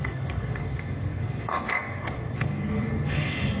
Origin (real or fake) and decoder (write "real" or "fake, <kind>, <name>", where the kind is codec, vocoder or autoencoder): fake, codec, SNAC